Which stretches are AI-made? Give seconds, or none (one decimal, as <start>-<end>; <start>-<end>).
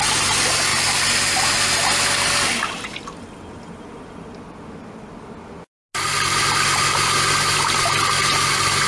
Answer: none